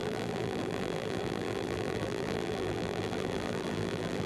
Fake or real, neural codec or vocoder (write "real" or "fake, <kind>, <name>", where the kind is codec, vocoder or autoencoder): fake, vocoder, BigVGAN v2